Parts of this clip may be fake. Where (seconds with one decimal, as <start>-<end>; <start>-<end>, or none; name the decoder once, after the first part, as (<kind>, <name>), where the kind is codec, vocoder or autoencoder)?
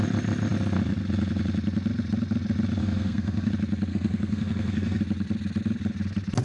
2.8-3.5 (codec, SNAC); 3.9-5.0